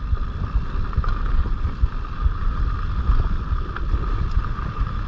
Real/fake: real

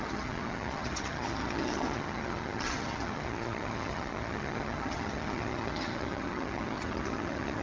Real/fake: fake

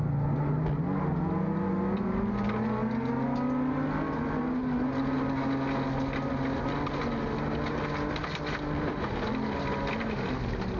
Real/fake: real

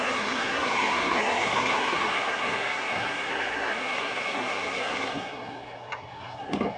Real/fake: fake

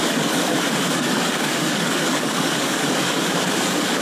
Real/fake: fake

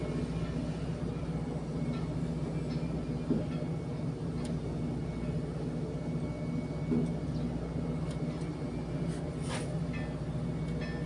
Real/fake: real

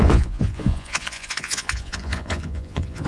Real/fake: fake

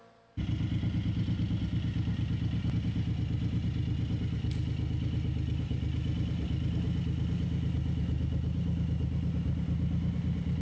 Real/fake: real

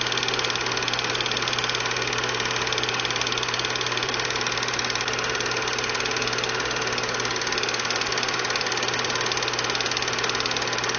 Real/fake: real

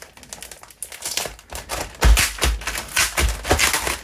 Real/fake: real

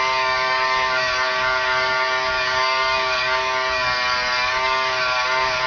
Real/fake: fake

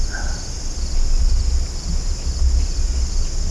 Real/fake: real